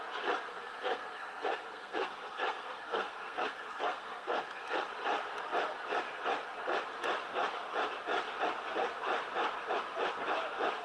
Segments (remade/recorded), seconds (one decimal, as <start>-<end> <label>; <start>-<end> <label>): 0.0-0.5 recorded; 0.5-4.9 remade; 4.9-10.8 recorded